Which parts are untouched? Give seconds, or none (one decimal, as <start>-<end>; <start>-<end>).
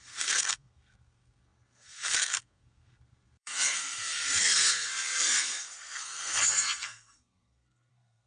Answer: none